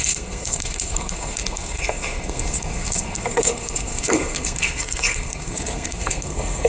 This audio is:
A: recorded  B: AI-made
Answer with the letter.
B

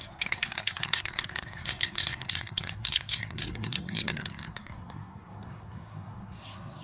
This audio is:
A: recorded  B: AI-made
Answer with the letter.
B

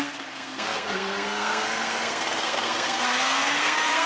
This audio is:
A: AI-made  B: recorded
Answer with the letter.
A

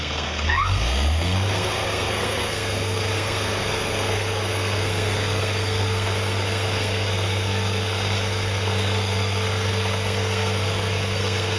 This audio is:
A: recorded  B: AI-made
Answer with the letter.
B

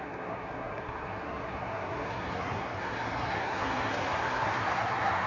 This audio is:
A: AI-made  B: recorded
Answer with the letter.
A